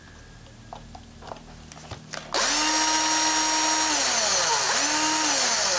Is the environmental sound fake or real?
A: real